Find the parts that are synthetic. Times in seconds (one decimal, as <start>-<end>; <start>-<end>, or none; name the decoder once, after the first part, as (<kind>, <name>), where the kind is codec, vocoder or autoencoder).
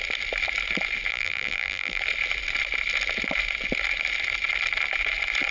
1.1-2.0 (vocoder, BigVGAN v2)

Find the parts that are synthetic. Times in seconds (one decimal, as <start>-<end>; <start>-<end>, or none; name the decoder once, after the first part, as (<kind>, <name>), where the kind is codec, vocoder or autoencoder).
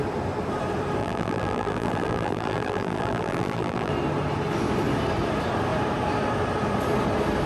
1.0-3.9 (vocoder, BigVGAN v2)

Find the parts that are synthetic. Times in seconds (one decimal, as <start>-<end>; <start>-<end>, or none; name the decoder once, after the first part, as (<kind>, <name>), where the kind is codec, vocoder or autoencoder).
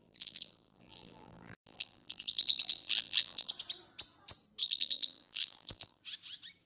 0.0-3.5 (vocoder, BigVGAN v2); 4.6-6.0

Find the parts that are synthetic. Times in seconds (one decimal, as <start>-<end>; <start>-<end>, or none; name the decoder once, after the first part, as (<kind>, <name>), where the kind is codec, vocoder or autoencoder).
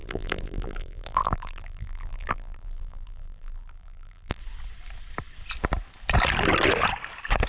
0.0-4.4 (vocoder, BigVGAN v2)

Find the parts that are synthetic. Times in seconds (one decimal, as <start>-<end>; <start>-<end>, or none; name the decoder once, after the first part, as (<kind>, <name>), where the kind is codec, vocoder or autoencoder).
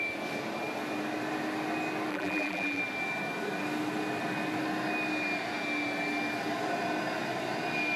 2.1-2.8 (vocoder, BigVGAN v2)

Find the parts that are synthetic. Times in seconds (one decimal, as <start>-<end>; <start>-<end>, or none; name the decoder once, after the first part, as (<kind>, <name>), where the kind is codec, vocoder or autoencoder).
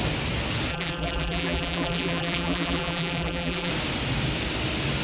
0.7-3.7 (vocoder, BigVGAN v2)